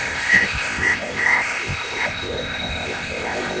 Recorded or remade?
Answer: remade